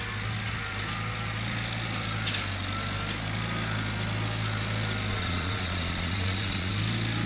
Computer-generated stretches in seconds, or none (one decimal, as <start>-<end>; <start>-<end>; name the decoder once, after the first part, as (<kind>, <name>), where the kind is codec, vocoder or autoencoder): 5.1-6.7 (vocoder, Vocos)